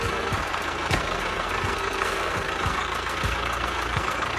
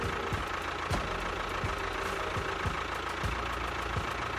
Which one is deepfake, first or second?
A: first